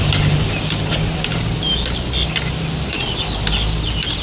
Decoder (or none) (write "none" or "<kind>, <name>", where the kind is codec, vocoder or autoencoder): none